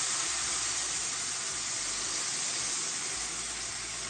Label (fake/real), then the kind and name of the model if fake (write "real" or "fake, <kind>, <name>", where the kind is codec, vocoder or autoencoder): real